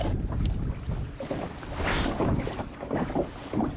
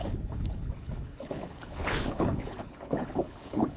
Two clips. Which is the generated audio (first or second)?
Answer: second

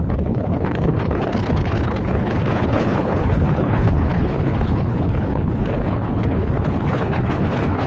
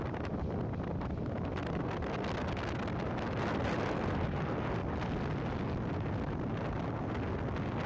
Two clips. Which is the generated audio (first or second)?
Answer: first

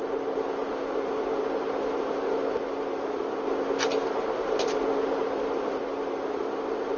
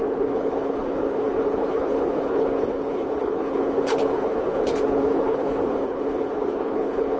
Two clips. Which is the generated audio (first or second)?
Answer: second